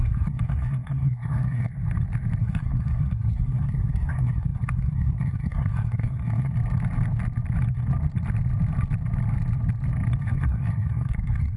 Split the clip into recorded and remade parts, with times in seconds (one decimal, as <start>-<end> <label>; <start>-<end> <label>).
0.0-1.7 remade; 1.7-2.4 recorded; 2.4-6.5 remade; 6.5-10.2 recorded; 10.2-11.6 remade